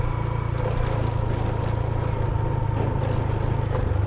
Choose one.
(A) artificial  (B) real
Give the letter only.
B